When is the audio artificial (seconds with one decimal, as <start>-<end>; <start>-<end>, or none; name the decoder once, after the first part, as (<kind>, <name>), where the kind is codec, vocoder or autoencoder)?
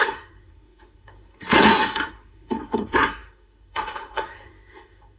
0.0-5.2 (codec, SNAC)